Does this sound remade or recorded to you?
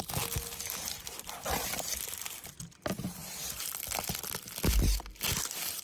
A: recorded